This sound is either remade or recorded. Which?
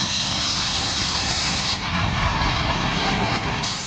remade